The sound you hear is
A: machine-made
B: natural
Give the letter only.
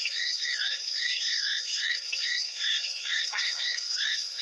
A